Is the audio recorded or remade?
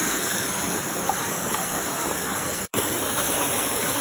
remade